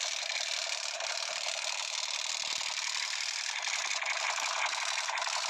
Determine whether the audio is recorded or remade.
recorded